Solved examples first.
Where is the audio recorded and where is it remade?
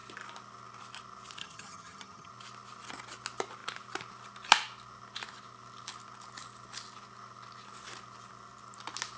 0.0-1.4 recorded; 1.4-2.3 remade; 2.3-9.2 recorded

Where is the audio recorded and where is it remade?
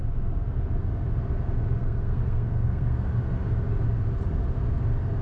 0.0-1.8 recorded; 1.8-3.1 remade; 3.1-5.2 recorded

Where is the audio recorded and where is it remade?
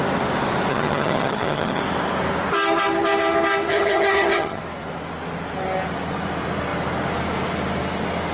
0.0-0.7 recorded; 0.7-1.8 remade; 1.8-3.7 recorded; 3.7-4.6 remade; 4.6-8.3 recorded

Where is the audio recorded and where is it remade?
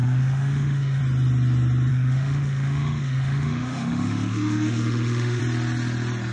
0.0-1.0 remade; 1.0-1.9 recorded; 1.9-5.4 remade; 5.4-6.3 recorded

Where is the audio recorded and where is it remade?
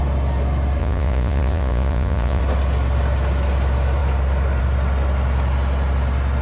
0.0-0.8 recorded; 0.8-2.4 remade; 2.4-6.4 recorded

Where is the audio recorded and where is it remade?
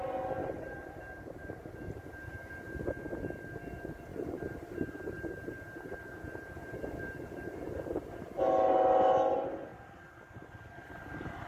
0.0-0.4 recorded; 0.4-2.5 remade; 2.5-4.1 recorded; 4.1-8.4 remade; 8.4-11.5 recorded